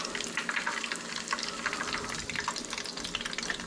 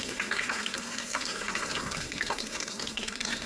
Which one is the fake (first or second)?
second